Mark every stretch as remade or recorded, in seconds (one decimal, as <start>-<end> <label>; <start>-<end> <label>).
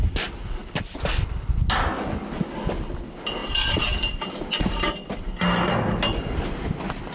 0.0-7.1 recorded